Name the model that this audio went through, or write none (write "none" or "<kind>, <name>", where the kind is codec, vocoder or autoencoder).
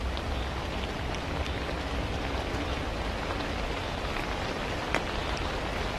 vocoder, BigVGAN v2